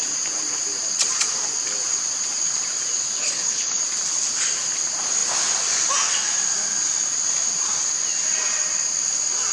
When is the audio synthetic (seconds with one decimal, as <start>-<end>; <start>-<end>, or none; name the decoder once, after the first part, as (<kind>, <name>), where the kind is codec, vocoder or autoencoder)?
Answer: 3.2-3.8 (codec, HILCodec)